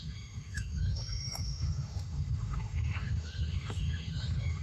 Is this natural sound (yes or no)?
no